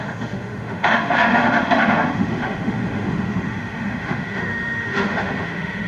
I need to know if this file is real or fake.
fake